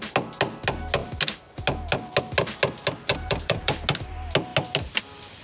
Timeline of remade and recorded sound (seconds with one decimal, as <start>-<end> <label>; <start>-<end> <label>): 0.0-3.1 recorded; 3.1-3.7 remade; 3.7-5.4 recorded